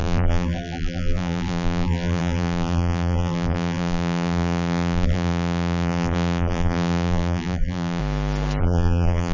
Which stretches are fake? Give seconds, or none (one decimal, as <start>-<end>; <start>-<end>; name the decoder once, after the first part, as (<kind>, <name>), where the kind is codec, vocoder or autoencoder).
0.0-8.0 (vocoder, BigVGAN v2); 8.6-9.3